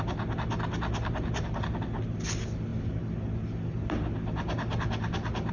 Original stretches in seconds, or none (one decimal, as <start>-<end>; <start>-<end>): 0.0-5.5